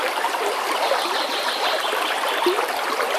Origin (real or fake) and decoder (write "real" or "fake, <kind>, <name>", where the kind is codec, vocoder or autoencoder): real